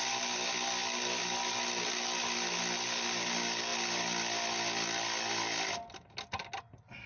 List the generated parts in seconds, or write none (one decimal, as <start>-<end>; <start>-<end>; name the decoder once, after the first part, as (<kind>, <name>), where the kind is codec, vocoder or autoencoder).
none